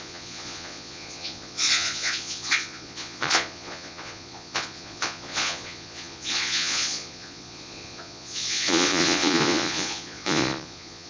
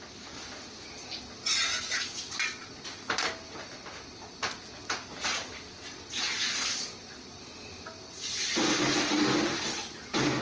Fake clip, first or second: first